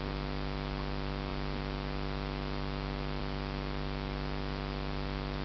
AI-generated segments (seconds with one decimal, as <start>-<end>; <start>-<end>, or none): none